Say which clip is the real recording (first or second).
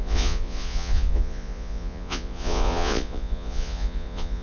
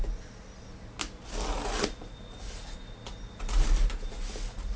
second